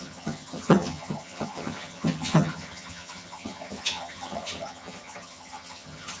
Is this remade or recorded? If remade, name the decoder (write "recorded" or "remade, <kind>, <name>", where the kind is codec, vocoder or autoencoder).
remade, vocoder, HiFi-GAN